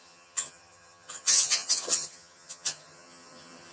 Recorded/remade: remade